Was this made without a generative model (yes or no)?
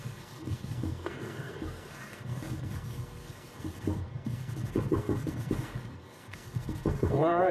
no